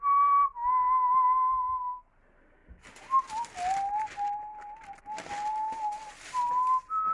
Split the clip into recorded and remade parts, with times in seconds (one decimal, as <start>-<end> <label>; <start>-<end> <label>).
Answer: 0.0-7.1 recorded